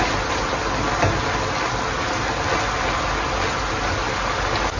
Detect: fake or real real